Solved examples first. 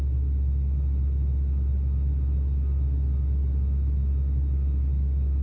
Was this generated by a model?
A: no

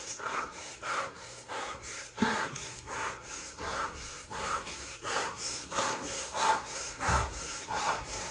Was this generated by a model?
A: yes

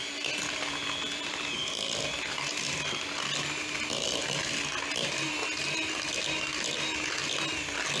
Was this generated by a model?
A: no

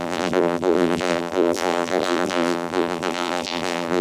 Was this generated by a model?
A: yes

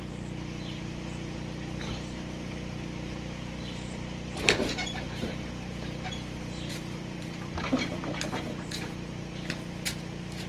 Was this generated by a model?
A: yes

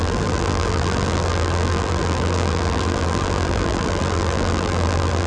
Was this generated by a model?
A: yes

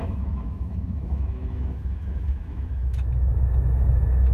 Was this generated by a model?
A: yes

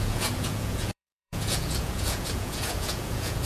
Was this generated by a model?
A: yes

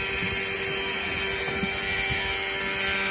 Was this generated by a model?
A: no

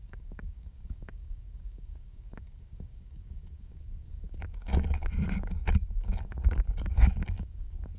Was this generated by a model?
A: yes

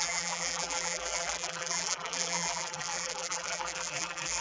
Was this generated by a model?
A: yes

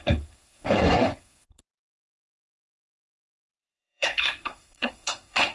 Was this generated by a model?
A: yes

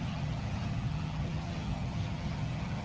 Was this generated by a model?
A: yes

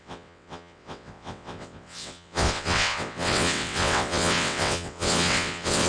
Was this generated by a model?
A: yes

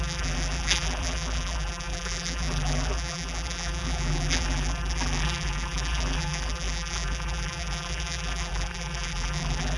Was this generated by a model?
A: yes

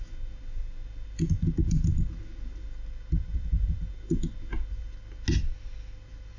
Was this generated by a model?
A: no